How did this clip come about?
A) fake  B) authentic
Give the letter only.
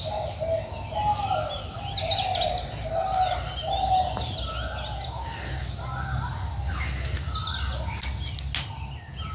B